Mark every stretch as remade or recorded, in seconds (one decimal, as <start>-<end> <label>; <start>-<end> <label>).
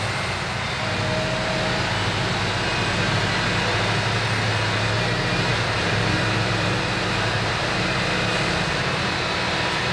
0.0-5.5 recorded; 5.5-8.3 remade; 8.3-9.9 recorded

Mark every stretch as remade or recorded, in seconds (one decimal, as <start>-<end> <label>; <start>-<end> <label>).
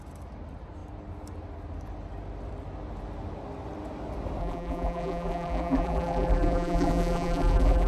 0.0-4.4 recorded; 4.4-7.9 remade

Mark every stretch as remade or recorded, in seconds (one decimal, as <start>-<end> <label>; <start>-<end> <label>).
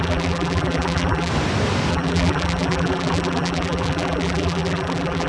0.0-1.3 remade; 1.3-1.9 recorded; 1.9-5.3 remade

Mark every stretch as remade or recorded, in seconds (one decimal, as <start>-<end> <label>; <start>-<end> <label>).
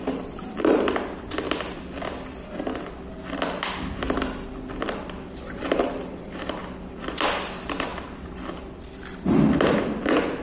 0.0-6.6 remade; 6.6-7.1 recorded; 7.1-10.4 remade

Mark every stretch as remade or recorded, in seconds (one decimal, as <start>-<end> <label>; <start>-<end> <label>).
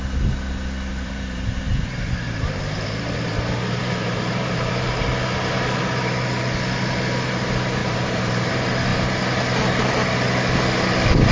0.0-0.9 recorded; 0.9-4.7 remade; 4.7-7.8 recorded; 7.8-8.5 remade; 8.5-11.3 recorded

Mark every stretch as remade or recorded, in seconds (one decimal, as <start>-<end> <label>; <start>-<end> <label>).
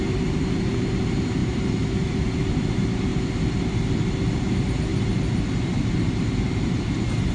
0.0-3.1 remade; 3.1-4.4 recorded; 4.4-4.9 remade; 4.9-5.5 recorded; 5.5-7.3 remade